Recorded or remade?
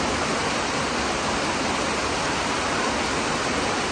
recorded